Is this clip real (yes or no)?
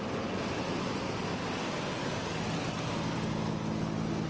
yes